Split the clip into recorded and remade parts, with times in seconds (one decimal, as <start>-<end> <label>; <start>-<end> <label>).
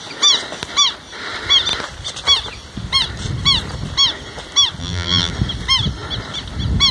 0.0-4.8 recorded; 4.8-5.3 remade; 5.3-6.9 recorded